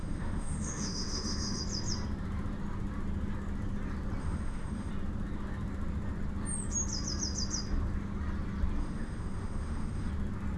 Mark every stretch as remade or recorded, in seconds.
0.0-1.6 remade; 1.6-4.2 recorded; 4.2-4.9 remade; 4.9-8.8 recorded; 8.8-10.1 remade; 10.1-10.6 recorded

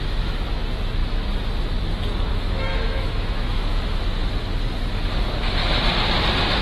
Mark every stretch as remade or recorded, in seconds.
0.0-1.0 recorded; 1.0-1.5 remade; 1.5-2.7 recorded; 2.7-3.6 remade; 3.6-6.6 recorded